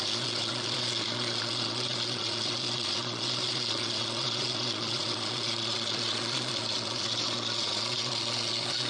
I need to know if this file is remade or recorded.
remade